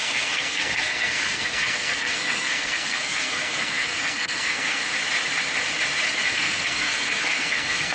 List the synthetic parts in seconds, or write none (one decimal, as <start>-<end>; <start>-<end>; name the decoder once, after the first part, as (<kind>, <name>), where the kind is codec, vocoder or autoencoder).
0.0-4.8 (codec, SNAC); 6.3-7.9

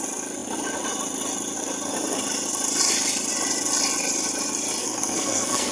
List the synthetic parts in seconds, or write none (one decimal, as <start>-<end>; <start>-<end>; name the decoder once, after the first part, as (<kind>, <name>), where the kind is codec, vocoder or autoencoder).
4.8-5.7 (codec, SNAC)